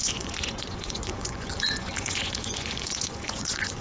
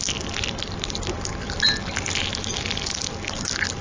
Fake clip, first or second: first